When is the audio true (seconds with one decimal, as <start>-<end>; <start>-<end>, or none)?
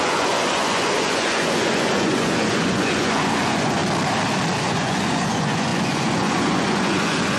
3.8-4.6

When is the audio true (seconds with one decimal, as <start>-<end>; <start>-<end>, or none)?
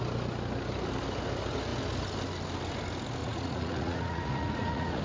0.0-3.2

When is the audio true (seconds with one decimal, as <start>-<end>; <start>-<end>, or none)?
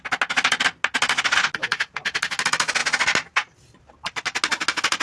0.0-5.0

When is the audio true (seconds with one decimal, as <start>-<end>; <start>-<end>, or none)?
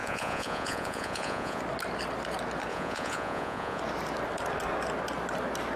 1.6-2.7; 3.8-5.8